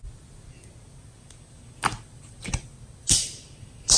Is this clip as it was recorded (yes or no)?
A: yes